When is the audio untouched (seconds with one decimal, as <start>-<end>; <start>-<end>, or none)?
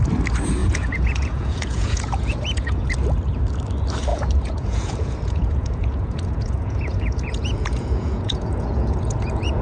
0.0-0.6; 2.9-4.1